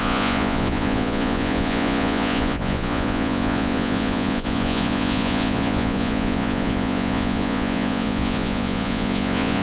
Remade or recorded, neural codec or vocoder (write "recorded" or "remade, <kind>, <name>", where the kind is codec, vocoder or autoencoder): remade, vocoder, Vocos